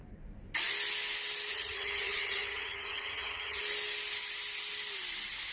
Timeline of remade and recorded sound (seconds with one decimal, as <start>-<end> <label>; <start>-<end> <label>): 0.0-1.5 recorded; 1.5-3.6 remade; 3.6-5.5 recorded